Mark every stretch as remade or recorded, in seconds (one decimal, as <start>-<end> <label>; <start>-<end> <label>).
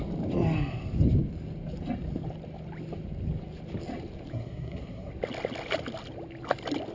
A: 0.0-4.3 recorded; 4.3-5.1 remade; 5.1-6.9 recorded